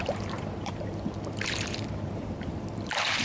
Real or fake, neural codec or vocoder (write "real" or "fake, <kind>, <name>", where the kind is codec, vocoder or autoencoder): fake, vocoder, BigVGAN v2